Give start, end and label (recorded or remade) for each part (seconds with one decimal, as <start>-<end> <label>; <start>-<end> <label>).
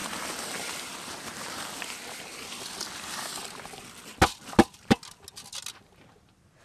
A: 0.0-6.6 recorded